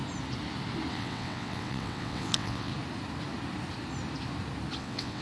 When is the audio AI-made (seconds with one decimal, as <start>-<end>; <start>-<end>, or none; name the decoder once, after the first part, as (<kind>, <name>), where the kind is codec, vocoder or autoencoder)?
0.9-2.7 (vocoder, WaveNeXt); 4.8-5.2